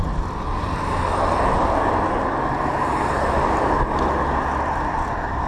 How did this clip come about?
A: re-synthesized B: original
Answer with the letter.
B